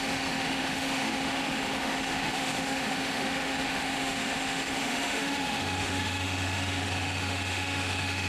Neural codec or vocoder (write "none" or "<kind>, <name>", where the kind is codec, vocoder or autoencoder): autoencoder, DAC-VAE